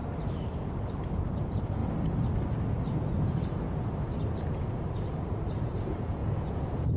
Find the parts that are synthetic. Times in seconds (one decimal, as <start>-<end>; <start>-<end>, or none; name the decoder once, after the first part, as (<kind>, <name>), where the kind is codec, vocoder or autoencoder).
1.1-1.8 (vocoder, Vocos); 4.4-7.0